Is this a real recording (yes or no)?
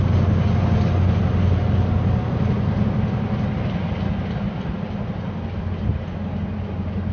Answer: yes